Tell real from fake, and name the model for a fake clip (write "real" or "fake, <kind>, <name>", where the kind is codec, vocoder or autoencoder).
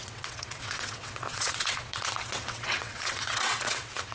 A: fake, vocoder, WaveNeXt